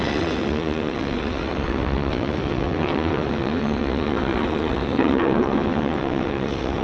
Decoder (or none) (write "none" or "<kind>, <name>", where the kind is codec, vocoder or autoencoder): vocoder, WaveNeXt